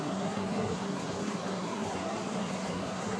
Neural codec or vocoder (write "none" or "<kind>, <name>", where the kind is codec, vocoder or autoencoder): codec, SNAC